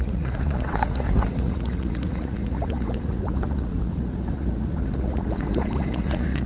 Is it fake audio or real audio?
fake